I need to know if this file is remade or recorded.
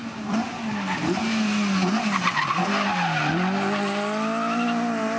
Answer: recorded